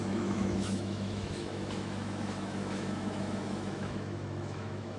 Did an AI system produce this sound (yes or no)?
yes